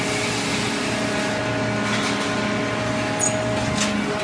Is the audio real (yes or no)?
yes